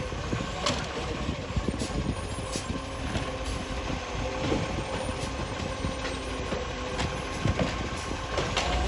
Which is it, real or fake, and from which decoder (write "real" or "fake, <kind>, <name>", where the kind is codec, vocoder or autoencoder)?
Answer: real